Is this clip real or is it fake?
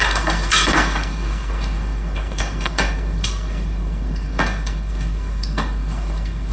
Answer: fake